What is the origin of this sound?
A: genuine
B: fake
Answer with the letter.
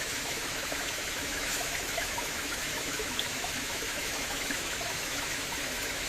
B